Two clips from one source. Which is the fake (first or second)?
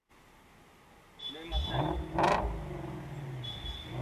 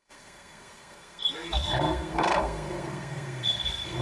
second